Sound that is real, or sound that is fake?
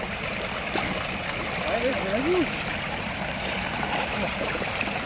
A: fake